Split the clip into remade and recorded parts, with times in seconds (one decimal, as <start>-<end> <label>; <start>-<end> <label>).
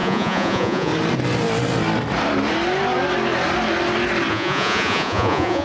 0.0-0.9 remade; 0.9-4.3 recorded; 4.3-5.6 remade